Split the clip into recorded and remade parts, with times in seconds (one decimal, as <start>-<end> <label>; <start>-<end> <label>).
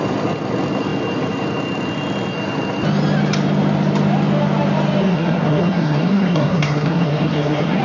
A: 0.0-5.0 recorded; 5.0-7.8 remade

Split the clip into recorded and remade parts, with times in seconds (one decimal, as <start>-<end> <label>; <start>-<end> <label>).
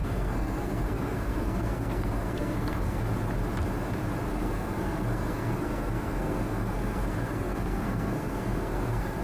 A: 0.0-3.0 remade; 3.0-4.3 recorded; 4.3-9.2 remade